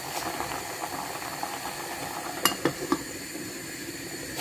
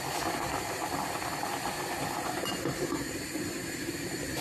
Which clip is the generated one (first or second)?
second